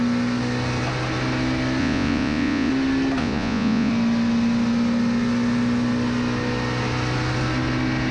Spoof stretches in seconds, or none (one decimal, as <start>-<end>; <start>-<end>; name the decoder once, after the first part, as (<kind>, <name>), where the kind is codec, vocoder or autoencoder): 1.8-2.7 (vocoder, Vocos); 3.2-3.9